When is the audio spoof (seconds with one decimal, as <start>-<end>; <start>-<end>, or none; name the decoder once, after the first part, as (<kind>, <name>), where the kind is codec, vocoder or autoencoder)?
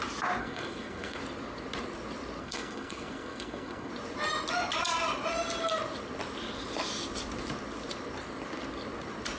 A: 0.4-1.2 (codec, SNAC); 2.4-3.9